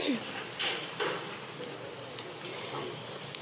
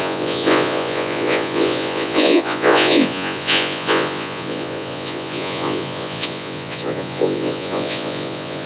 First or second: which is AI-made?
second